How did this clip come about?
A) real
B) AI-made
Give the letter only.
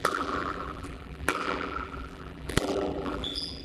B